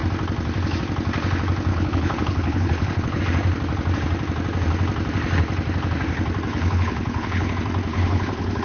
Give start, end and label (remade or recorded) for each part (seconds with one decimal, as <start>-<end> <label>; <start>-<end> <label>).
0.0-1.7 recorded; 1.7-3.2 remade; 3.2-6.5 recorded; 6.5-7.5 remade; 7.5-7.9 recorded; 7.9-8.6 remade